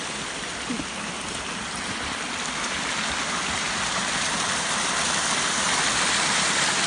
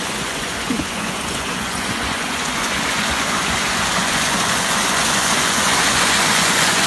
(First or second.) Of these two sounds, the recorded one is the first